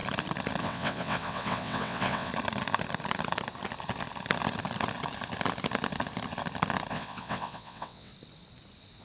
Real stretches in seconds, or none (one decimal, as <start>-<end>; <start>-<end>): 0.0-0.6; 2.3-6.9; 8.1-9.0